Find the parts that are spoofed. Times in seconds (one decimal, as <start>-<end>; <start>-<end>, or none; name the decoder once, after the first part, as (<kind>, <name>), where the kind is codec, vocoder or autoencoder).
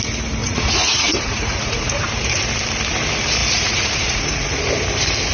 0.4-2.0 (vocoder, Vocos); 3.4-4.6